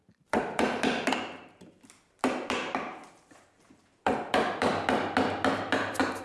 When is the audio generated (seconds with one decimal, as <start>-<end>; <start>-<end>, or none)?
0.0-4.7